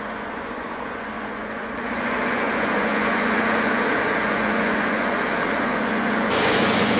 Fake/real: fake